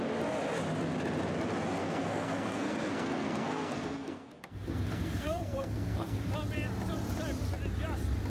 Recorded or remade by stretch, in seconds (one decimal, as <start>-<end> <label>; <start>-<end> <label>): 0.0-1.8 recorded; 1.8-6.3 remade; 6.3-8.3 recorded